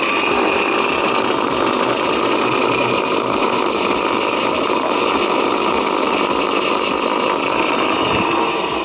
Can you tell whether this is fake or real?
fake